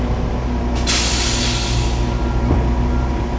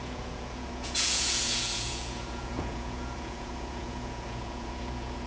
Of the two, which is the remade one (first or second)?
second